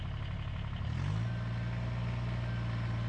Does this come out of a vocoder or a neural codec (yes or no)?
no